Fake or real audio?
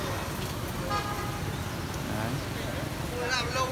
real